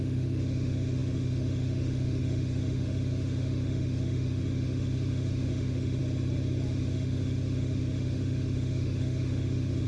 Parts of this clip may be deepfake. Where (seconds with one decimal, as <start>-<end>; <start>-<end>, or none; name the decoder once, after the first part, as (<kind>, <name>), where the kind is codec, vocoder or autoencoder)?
0.0-6.0 (autoencoder, DAC-VAE); 6.7-9.9